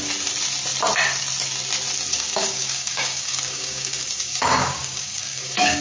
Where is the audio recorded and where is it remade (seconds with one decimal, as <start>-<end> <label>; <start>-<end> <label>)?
0.0-2.1 recorded; 2.1-5.8 remade